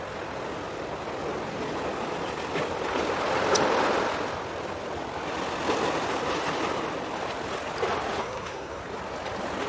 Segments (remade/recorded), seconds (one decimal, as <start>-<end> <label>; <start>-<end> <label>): 0.0-8.2 recorded; 8.2-8.8 remade; 8.8-9.7 recorded